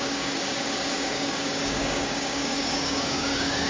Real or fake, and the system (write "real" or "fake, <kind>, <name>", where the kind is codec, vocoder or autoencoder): fake, codec, DAC